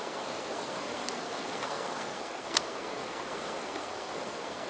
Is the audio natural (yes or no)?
no